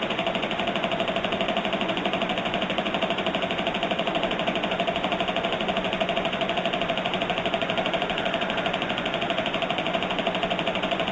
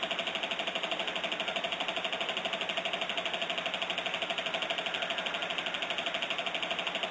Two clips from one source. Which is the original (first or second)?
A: second